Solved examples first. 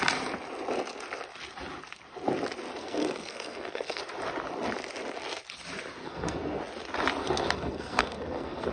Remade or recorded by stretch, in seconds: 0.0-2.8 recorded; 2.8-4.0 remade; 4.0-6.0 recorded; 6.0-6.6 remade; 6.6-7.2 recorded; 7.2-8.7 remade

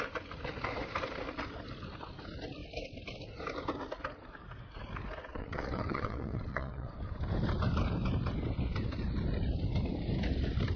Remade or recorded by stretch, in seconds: 0.0-5.3 recorded; 5.3-6.9 remade; 6.9-10.8 recorded

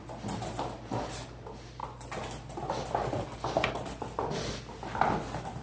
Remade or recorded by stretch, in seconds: 0.0-5.6 recorded

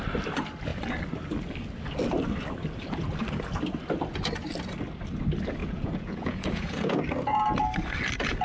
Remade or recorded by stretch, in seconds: 0.0-5.6 recorded; 5.6-7.0 remade; 7.0-8.4 recorded

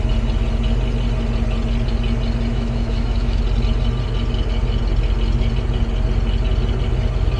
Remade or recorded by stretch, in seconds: 0.0-2.5 recorded; 2.5-3.4 remade; 3.4-7.4 recorded